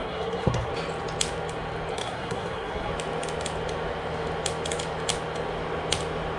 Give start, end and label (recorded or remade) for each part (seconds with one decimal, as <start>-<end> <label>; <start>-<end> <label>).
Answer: 0.0-0.7 remade; 0.7-1.9 recorded; 1.9-2.9 remade; 2.9-6.4 recorded